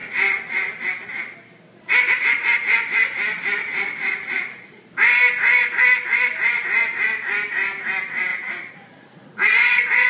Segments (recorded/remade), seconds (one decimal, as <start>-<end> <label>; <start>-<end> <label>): 0.0-3.6 recorded; 3.6-4.8 remade; 4.8-8.3 recorded; 8.3-10.1 remade